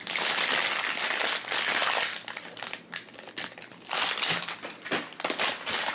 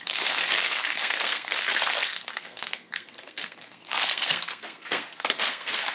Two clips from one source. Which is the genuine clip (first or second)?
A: first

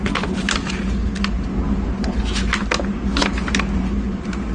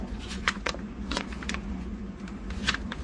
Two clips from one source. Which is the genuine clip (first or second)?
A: first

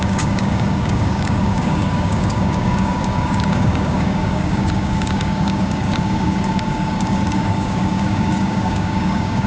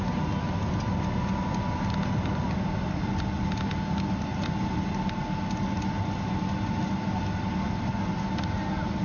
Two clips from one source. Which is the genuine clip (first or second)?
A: second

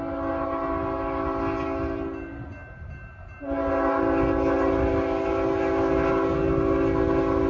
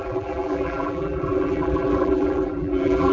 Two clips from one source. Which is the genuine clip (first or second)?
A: first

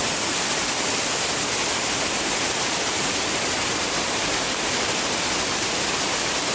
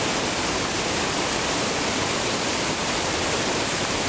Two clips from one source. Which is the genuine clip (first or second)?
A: first